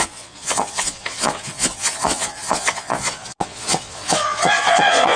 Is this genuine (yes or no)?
no